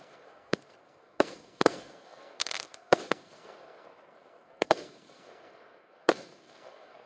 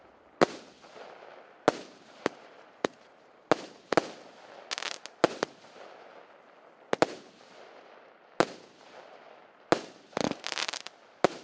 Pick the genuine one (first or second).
second